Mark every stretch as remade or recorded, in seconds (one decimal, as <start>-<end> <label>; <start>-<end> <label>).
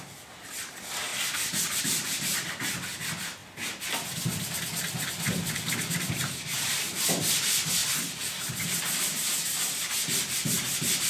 0.0-1.1 remade; 1.1-1.8 recorded; 1.8-3.4 remade; 3.4-5.9 recorded; 5.9-11.1 remade